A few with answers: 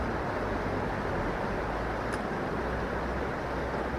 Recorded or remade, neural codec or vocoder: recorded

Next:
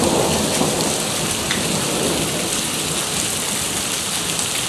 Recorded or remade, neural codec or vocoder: recorded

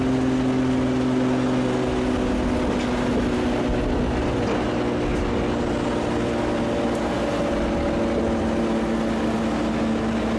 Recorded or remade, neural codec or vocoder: recorded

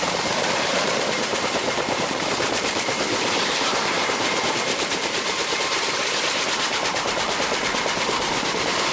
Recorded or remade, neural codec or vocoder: remade, vocoder, BigVGAN v2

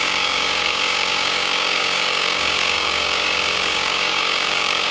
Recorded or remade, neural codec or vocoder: remade, codec, DAC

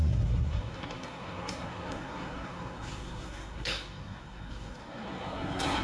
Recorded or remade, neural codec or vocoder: remade, codec, SNAC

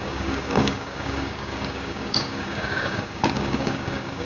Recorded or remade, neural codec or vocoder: remade, codec, DAC